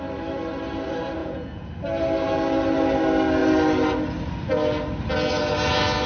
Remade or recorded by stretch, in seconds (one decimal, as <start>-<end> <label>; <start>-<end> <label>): 0.0-1.2 recorded; 1.2-1.7 remade; 1.7-6.1 recorded